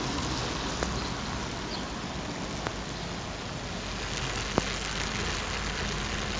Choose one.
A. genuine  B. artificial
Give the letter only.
A